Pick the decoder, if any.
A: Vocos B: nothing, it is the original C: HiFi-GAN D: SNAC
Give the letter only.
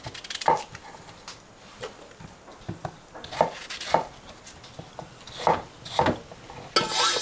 B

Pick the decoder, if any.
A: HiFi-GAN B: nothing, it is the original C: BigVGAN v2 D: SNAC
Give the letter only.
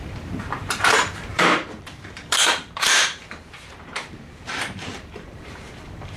C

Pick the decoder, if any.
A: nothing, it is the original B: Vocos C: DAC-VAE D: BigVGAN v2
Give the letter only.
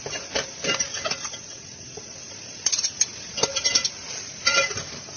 D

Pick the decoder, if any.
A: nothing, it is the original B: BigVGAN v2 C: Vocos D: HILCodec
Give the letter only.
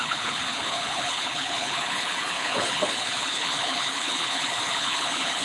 D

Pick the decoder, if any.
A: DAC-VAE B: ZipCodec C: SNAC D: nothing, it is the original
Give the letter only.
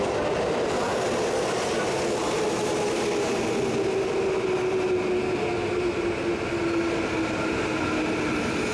D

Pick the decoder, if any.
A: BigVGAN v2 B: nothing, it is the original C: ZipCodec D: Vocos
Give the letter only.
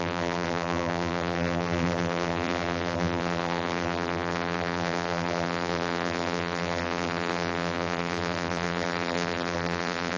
A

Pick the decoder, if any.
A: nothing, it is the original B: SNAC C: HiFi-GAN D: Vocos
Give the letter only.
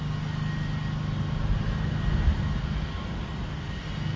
A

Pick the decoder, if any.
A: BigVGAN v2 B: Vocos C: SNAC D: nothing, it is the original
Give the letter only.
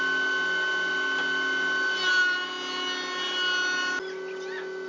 D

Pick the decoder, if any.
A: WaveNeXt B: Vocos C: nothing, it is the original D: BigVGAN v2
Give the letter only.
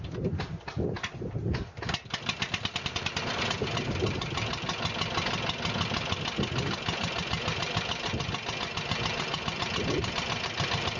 C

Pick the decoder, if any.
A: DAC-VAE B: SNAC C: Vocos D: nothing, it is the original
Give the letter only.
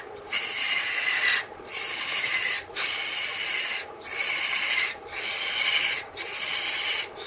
D